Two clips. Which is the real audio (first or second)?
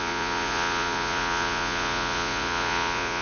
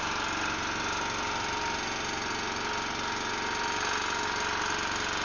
second